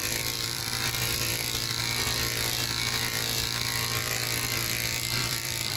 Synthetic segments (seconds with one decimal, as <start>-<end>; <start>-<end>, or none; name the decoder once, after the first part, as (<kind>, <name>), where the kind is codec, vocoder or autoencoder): 0.0-1.8 (vocoder, BigVGAN v2); 5.2-5.8